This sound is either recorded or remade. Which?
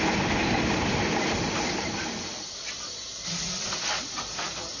recorded